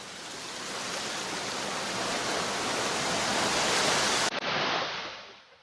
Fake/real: real